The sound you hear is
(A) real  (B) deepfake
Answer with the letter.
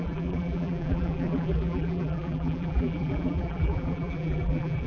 B